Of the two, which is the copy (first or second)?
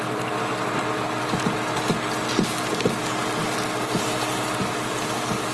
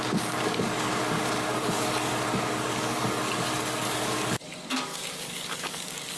second